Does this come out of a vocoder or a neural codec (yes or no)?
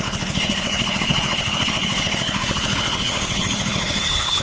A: yes